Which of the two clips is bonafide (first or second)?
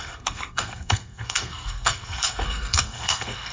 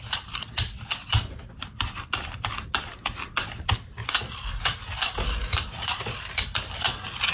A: second